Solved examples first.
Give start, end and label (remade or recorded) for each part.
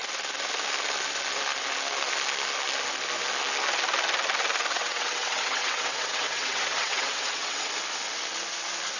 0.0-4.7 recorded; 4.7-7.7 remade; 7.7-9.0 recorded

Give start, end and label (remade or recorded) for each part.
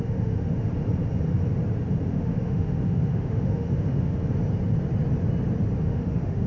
0.0-0.7 remade; 0.7-2.1 recorded; 2.1-4.2 remade; 4.2-5.8 recorded; 5.8-6.5 remade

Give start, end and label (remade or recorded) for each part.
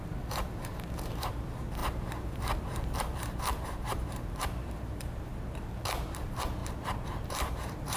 0.0-5.3 remade; 5.3-6.1 recorded; 6.1-6.6 remade; 6.6-7.2 recorded; 7.2-8.0 remade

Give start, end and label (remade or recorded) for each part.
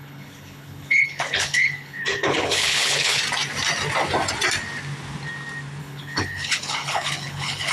0.0-3.2 remade; 3.2-5.8 recorded; 5.8-7.7 remade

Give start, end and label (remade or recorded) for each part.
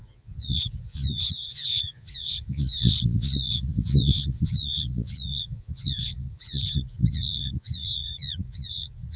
0.0-9.2 remade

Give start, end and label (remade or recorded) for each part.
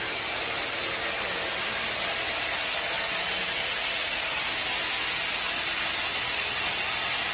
0.0-3.7 recorded; 3.7-4.4 remade; 4.4-7.3 recorded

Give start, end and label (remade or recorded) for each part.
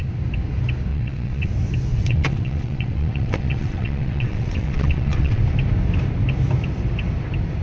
0.0-0.9 recorded; 0.9-1.5 remade; 1.5-1.9 recorded; 1.9-5.4 remade; 5.4-7.6 recorded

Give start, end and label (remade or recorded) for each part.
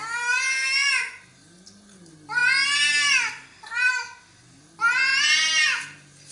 0.0-6.3 recorded